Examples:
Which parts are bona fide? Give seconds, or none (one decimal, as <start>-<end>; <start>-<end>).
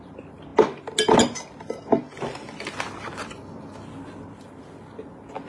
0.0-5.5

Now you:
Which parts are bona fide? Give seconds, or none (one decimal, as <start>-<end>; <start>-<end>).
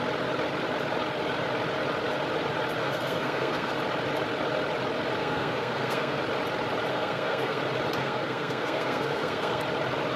0.0-2.8; 3.7-5.2; 6.2-6.9; 7.6-8.0; 9.6-10.2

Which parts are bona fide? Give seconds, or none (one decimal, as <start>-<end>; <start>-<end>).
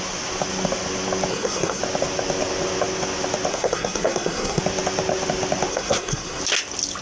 0.0-1.3; 1.8-3.5; 4.6-5.7; 6.4-7.0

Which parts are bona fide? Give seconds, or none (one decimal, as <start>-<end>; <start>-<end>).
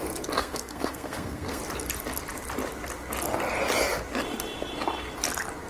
0.0-0.4; 1.6-5.7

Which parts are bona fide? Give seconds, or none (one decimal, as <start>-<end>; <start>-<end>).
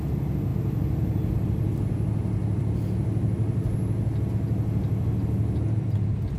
0.0-6.4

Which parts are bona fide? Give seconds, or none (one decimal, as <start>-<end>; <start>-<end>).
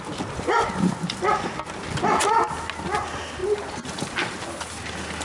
0.0-5.2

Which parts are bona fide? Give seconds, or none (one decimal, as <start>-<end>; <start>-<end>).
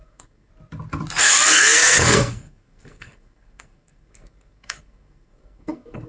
0.5-1.2